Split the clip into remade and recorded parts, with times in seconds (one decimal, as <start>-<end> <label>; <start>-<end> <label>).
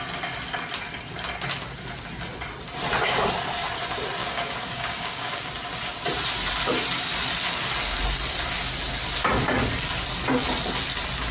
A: 0.0-4.2 recorded; 4.2-5.5 remade; 5.5-11.3 recorded